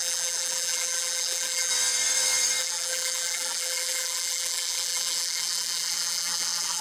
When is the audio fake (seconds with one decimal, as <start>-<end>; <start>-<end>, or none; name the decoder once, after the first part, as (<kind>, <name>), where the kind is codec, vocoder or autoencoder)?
0.0-1.7 (vocoder, BigVGAN v2); 2.6-6.8